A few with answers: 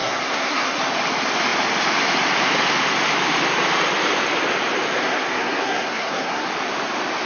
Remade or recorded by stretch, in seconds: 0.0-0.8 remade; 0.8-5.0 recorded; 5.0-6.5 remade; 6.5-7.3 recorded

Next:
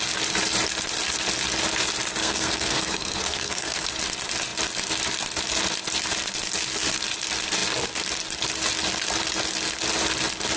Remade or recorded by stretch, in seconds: 0.0-2.2 recorded; 2.2-3.9 remade; 3.9-10.6 recorded

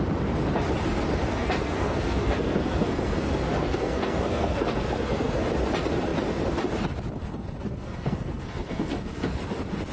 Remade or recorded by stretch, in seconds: 0.0-1.3 recorded; 1.3-5.4 remade; 5.4-7.2 recorded; 7.2-9.4 remade; 9.4-9.9 recorded

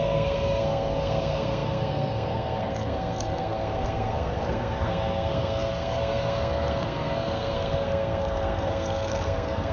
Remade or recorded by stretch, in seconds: 0.0-9.7 remade

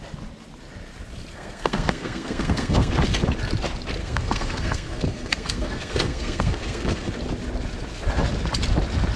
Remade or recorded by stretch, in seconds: 0.0-1.3 recorded; 1.3-2.9 remade; 2.9-4.0 recorded; 4.0-7.1 remade; 7.1-9.2 recorded

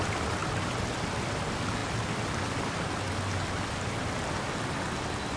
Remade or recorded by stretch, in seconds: 0.0-5.4 recorded

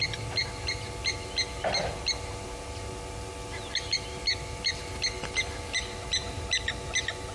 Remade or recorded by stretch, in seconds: 0.0-7.3 recorded